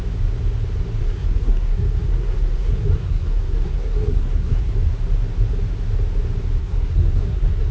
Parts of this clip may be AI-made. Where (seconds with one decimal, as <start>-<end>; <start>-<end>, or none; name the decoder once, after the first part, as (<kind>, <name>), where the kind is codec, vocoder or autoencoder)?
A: 1.0-4.7 (codec, SNAC); 6.6-7.7